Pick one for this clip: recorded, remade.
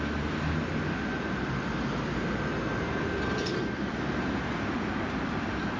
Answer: recorded